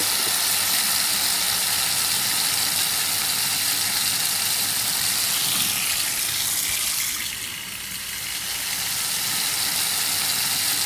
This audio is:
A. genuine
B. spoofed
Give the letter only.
A